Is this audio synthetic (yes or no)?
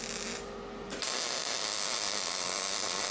no